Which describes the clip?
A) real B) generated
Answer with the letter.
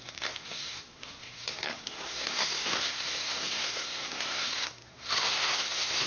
B